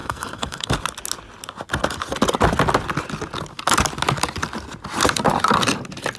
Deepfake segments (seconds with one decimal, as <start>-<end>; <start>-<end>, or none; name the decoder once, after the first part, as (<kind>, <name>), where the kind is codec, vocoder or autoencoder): 0.0-0.7 (codec, SNAC)